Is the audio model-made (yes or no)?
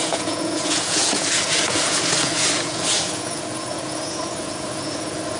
yes